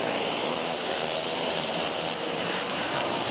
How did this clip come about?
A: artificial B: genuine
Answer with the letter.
A